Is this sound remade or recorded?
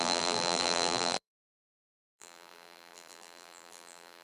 remade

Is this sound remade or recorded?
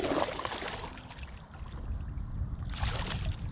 recorded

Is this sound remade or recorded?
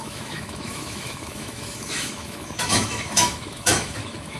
remade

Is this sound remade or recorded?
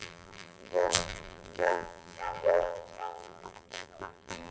remade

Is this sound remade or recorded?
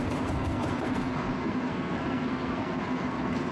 remade